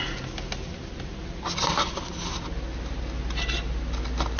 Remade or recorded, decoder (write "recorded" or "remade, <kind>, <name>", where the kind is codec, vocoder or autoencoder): recorded